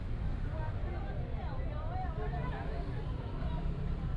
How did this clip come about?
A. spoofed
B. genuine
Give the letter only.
B